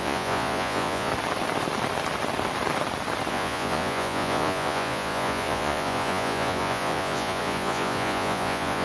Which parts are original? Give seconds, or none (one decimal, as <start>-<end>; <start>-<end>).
1.1-3.3